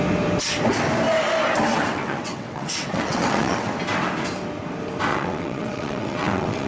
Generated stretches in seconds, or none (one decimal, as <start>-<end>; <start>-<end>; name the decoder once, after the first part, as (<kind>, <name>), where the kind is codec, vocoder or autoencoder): 1.7-3.7 (vocoder, WaveNeXt); 5.1-6.7